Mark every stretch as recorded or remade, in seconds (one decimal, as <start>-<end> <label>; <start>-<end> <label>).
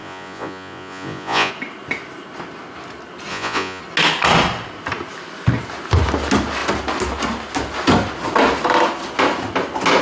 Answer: 0.0-1.5 remade; 1.5-3.3 recorded; 3.3-3.8 remade; 3.8-10.0 recorded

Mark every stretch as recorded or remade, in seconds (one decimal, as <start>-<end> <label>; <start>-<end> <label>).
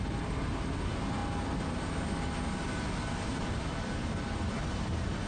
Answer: 0.0-5.3 recorded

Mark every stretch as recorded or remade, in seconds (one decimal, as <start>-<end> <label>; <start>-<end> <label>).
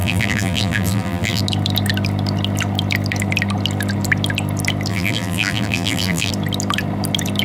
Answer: 0.0-1.4 remade; 1.4-4.9 recorded; 4.9-6.3 remade; 6.3-7.4 recorded